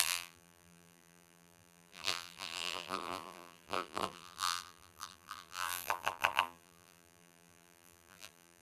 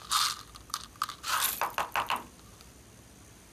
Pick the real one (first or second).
second